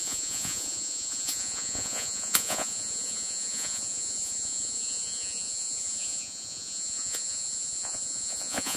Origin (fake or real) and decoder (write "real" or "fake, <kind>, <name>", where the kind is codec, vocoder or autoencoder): fake, vocoder, Vocos